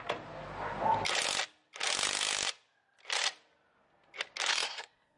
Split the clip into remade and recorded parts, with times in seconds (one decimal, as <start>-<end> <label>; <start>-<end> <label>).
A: 0.0-4.5 recorded; 4.5-5.2 remade